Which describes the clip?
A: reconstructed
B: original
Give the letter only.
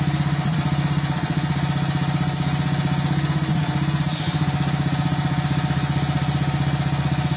B